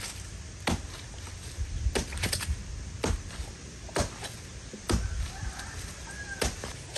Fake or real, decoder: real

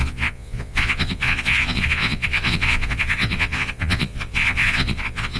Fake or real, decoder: fake, vocoder, Vocos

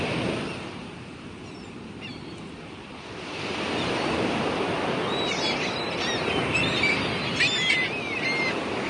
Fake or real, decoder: real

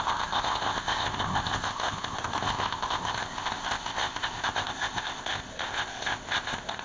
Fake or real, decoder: fake, codec, ZipCodec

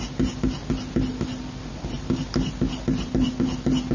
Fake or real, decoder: real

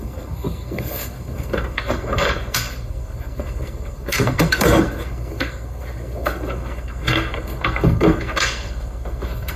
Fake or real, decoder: fake, codec, SNAC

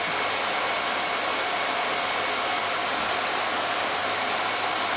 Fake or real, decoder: real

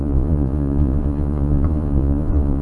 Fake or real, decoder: fake, vocoder, Vocos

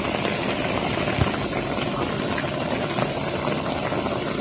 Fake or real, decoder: real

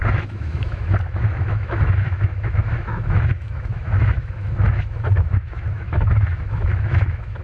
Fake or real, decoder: fake, autoencoder, DAC-VAE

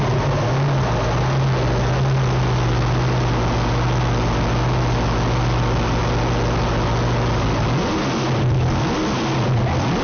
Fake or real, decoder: real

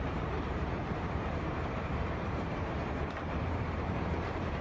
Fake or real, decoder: fake, vocoder, BigVGAN v2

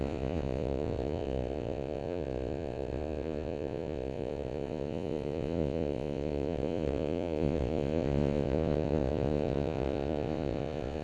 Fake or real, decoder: fake, vocoder, Vocos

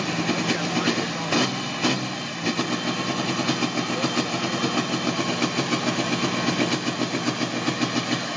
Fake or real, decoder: real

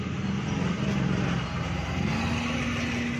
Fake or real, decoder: real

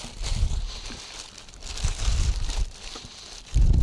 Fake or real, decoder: fake, vocoder, BigVGAN v2